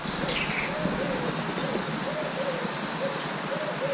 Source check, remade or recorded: recorded